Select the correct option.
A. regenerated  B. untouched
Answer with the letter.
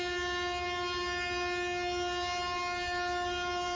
B